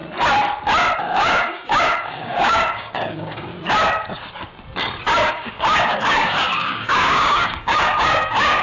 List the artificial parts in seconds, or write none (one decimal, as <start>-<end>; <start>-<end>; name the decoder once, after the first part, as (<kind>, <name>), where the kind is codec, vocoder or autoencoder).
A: 1.0-3.5 (codec, DAC); 5.3-8.6